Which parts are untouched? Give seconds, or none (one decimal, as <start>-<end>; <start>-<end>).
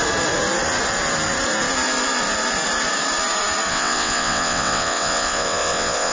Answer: 0.0-3.7